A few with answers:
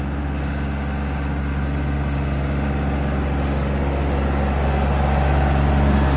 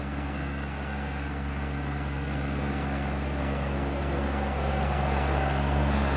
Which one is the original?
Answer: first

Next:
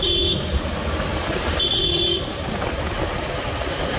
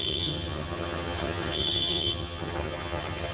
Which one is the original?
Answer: first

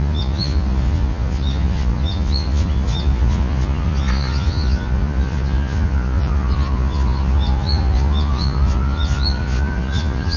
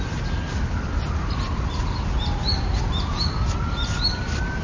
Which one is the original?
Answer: second